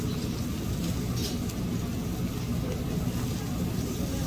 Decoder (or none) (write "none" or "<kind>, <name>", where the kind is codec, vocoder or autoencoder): none